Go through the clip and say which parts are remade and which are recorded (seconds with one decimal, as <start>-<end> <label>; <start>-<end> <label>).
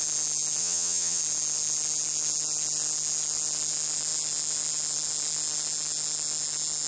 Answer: 0.0-0.6 recorded; 0.6-1.2 remade; 1.2-6.9 recorded